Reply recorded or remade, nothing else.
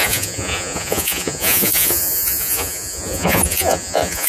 remade